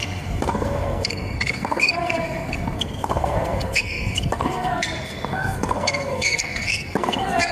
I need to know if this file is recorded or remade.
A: remade